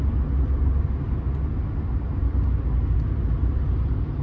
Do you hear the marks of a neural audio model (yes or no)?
no